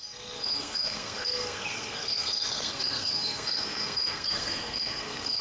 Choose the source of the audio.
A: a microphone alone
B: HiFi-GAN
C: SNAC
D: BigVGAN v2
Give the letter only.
C